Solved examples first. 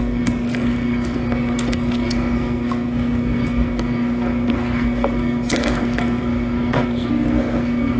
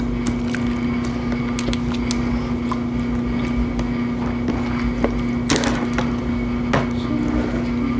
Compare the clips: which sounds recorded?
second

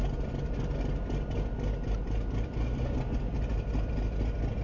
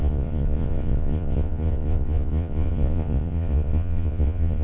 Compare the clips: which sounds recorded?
first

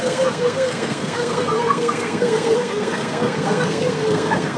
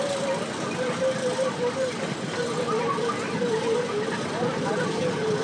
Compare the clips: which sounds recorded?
second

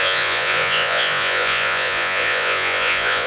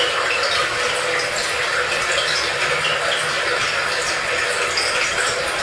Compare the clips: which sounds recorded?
second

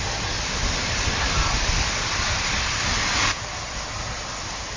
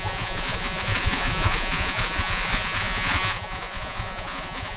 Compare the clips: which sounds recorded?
first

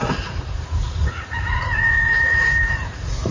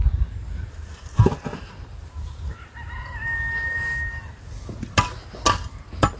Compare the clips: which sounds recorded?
second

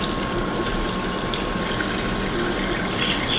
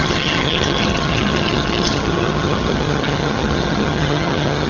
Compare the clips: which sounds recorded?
first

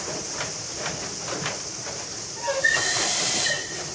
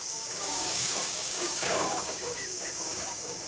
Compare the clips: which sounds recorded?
first